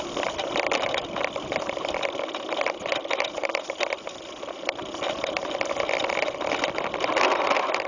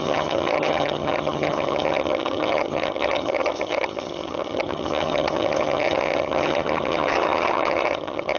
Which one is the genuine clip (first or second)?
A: first